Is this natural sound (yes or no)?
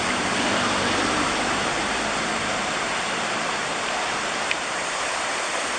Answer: no